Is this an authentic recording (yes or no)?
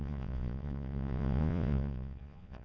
no